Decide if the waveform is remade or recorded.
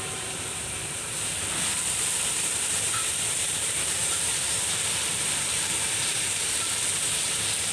remade